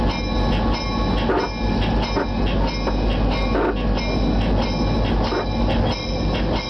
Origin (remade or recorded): recorded